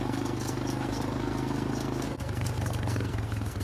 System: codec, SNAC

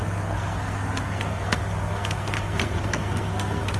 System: codec, SNAC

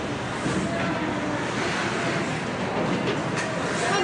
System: none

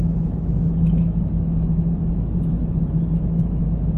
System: autoencoder, DAC-VAE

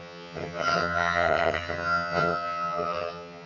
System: vocoder, HiFi-GAN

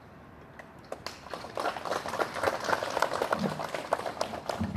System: none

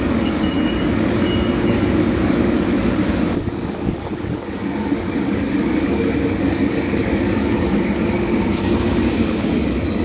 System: codec, DAC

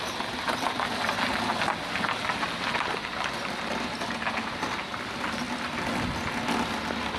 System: none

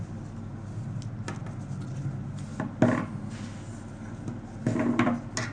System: none